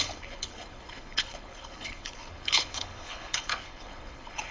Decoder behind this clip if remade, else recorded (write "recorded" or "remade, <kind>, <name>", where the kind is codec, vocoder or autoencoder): remade, codec, HILCodec